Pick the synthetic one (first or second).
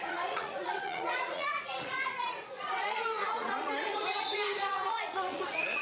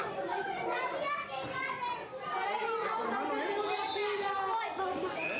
first